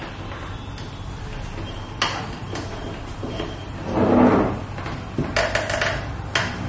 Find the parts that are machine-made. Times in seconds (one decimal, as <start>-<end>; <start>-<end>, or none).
none